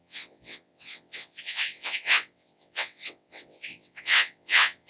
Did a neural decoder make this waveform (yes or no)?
yes